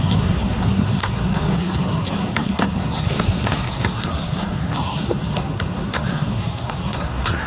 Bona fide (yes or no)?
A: no